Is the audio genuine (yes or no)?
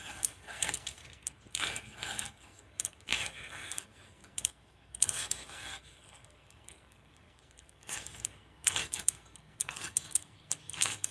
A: no